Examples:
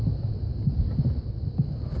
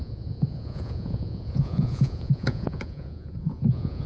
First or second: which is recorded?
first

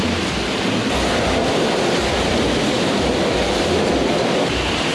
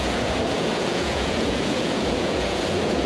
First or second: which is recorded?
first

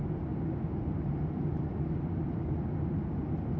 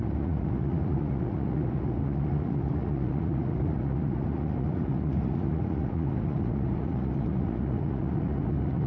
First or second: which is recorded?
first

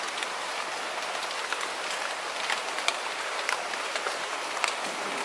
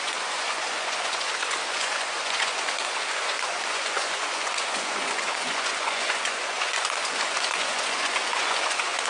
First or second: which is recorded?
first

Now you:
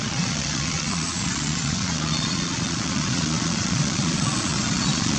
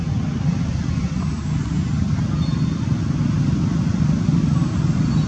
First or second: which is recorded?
second